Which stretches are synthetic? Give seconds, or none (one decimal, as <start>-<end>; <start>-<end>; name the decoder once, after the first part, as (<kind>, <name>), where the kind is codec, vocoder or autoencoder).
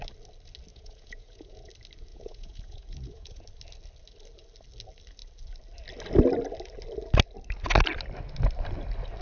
0.7-1.7 (vocoder, Vocos); 2.1-3.4